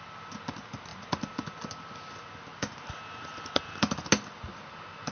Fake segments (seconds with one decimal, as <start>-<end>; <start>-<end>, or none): none